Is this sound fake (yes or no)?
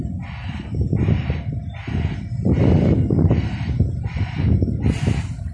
no